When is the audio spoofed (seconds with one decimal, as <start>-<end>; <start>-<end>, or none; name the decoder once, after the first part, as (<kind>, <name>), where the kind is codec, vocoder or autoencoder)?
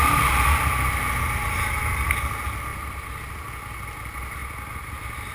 1.4-2.1 (vocoder, BigVGAN v2); 2.7-3.3; 4.4-5.3